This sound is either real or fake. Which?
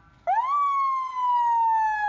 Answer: real